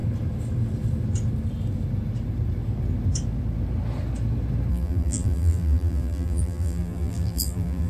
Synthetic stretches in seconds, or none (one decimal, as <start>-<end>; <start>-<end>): 4.7-7.9